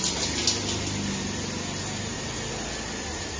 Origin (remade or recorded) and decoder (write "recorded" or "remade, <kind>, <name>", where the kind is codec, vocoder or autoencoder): recorded